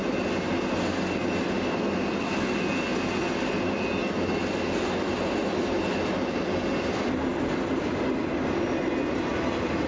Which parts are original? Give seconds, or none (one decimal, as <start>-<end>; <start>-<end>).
0.0-9.9